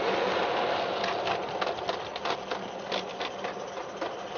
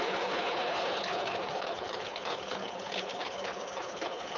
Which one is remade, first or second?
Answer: second